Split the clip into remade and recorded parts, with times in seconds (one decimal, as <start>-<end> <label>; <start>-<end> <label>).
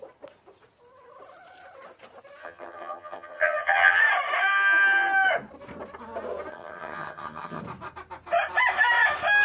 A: 0.0-2.4 recorded; 2.4-4.0 remade; 4.0-6.5 recorded; 6.5-7.6 remade; 7.6-9.4 recorded